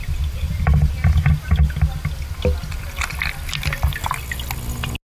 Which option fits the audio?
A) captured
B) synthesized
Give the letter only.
A